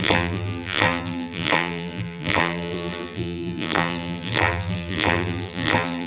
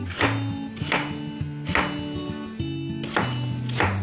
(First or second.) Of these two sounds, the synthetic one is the first